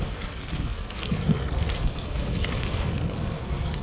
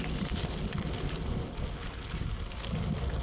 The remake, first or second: first